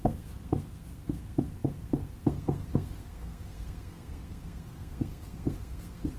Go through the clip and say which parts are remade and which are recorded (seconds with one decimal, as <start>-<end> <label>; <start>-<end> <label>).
0.0-6.2 remade